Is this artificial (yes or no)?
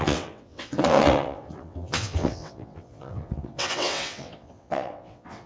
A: yes